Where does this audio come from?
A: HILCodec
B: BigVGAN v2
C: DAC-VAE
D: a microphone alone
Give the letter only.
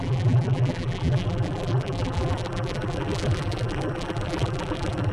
B